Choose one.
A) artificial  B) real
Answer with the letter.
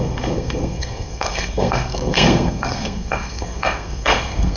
A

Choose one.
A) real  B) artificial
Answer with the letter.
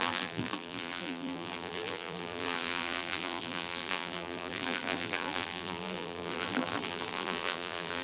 B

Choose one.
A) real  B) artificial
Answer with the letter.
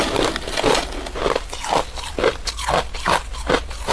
A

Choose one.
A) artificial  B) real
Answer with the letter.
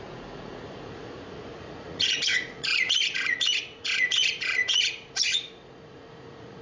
A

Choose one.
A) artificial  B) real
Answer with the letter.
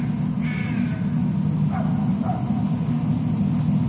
B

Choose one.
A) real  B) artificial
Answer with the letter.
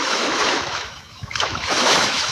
B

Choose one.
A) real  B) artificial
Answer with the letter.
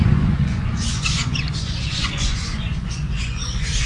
B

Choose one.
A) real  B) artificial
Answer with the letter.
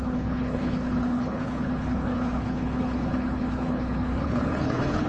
B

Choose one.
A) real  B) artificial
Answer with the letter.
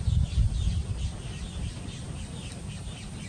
A